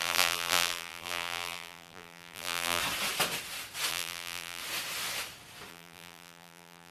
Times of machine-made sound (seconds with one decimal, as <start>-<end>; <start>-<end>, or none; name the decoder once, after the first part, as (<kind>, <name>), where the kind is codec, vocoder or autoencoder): 0.0-2.8 (vocoder, BigVGAN v2); 3.9-4.6; 5.7-6.9

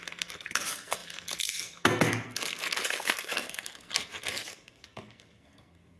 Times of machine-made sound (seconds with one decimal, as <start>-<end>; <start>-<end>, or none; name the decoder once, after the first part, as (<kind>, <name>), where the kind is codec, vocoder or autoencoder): 0.0-6.0 (codec, SNAC)

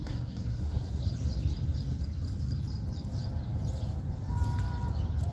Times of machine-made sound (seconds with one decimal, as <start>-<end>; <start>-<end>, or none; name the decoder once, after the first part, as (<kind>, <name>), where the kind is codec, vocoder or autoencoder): 0.0-1.0 (codec, SNAC)

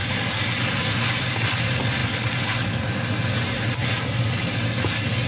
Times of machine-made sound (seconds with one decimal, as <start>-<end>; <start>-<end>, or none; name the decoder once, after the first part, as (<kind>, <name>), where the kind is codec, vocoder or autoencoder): none

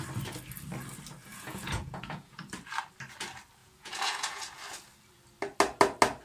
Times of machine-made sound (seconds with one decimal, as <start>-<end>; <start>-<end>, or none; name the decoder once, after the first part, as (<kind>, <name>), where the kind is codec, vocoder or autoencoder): 1.2-2.4 (vocoder, Vocos); 3.6-4.5